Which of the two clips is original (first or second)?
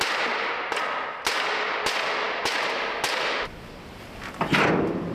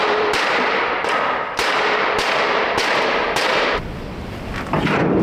first